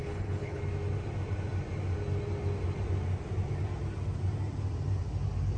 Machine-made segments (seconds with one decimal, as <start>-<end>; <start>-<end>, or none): 0.0-0.6